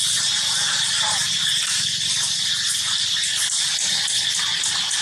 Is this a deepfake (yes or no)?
no